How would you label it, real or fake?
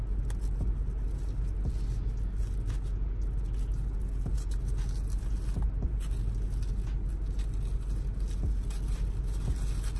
real